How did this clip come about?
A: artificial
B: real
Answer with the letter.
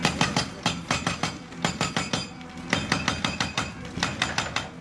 B